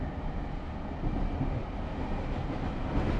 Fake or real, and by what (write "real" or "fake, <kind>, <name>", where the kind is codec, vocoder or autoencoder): real